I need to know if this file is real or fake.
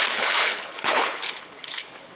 fake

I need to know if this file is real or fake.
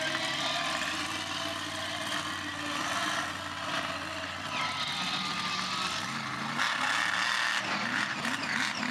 real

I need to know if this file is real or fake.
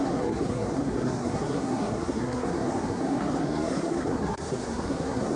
fake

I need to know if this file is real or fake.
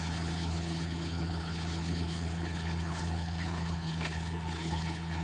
fake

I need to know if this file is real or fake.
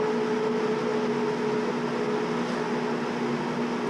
real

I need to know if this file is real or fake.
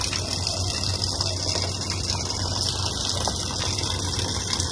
real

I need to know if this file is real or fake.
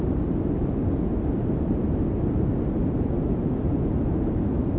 real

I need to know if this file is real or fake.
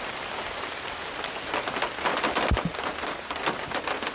real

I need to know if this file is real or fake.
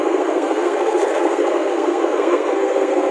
fake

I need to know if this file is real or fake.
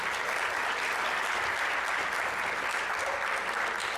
real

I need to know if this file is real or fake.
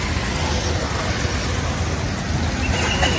real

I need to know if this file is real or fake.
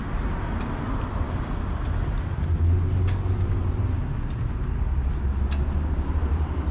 real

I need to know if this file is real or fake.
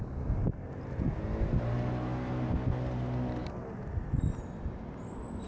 real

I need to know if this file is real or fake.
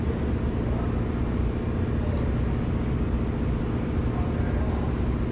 real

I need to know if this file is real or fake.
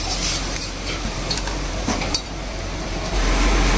fake